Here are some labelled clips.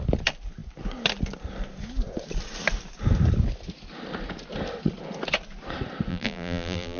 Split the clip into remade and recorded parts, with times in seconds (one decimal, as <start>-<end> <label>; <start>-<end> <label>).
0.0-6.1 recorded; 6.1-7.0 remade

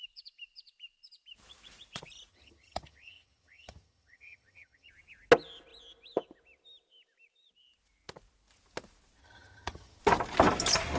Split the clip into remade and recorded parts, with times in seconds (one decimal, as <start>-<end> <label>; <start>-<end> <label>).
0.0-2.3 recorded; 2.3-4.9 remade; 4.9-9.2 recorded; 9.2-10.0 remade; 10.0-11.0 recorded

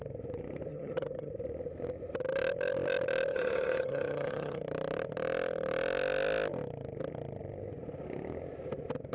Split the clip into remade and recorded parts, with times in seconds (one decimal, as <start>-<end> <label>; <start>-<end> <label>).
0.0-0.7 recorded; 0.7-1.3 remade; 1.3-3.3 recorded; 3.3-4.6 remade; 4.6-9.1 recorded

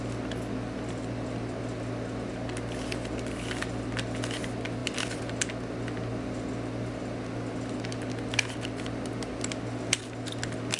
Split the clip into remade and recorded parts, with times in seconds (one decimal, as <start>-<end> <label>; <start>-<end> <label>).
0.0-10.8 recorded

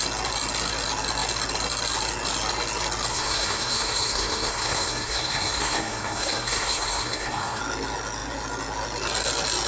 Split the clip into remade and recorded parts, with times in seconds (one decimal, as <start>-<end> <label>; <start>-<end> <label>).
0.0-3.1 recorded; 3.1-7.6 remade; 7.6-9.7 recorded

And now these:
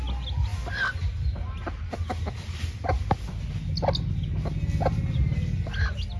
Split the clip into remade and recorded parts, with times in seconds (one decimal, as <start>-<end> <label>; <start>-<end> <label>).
0.0-6.2 recorded

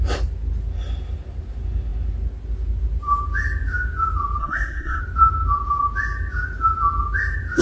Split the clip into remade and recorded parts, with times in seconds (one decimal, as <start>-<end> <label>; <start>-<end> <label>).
0.0-4.4 recorded; 4.4-5.0 remade; 5.0-7.6 recorded

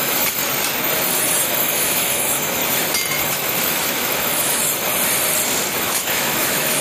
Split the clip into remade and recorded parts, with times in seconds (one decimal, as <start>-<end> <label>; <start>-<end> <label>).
0.0-0.4 remade; 0.4-1.4 recorded; 1.4-2.6 remade; 2.6-3.2 recorded; 3.2-4.6 remade; 4.6-5.7 recorded; 5.7-6.8 remade